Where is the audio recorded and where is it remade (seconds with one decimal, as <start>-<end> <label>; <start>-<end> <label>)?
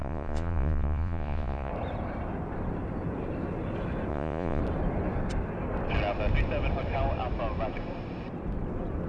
0.0-1.7 remade; 1.7-4.1 recorded; 4.1-4.6 remade; 4.6-9.1 recorded